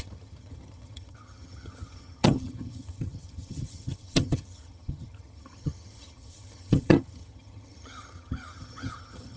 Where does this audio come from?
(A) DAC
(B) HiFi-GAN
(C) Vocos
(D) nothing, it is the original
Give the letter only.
B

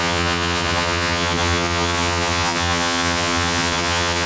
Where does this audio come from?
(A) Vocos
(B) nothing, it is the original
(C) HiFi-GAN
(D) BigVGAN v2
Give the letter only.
C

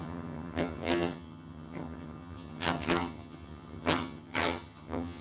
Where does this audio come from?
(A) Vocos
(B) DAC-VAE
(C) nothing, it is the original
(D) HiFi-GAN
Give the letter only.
D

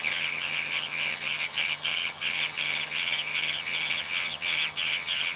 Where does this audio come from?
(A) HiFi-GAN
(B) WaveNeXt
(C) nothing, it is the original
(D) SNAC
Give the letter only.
A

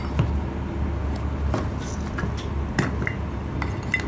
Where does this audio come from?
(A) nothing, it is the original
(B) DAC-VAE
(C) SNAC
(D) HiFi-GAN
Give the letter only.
A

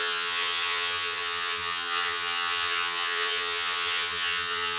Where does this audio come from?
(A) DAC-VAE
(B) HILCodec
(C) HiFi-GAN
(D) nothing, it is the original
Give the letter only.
C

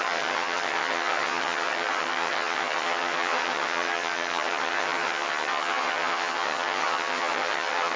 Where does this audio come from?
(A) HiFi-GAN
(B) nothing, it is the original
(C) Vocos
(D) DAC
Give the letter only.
A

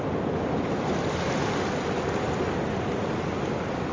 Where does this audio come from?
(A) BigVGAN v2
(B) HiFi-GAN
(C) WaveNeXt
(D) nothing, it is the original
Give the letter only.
D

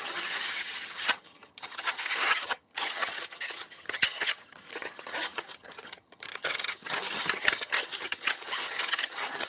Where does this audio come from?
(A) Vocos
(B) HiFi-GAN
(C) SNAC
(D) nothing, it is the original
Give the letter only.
B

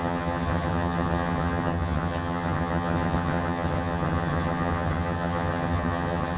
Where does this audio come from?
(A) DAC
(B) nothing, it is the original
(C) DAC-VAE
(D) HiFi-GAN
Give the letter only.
D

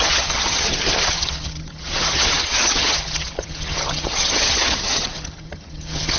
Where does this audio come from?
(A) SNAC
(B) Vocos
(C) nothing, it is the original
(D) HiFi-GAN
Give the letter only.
D